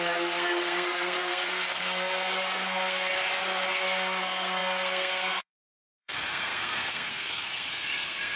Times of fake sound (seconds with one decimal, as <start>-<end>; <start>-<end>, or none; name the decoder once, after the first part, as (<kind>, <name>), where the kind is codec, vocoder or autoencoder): 0.0-3.1 (codec, SNAC); 3.7-8.4